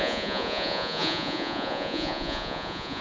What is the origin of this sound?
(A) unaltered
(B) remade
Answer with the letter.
B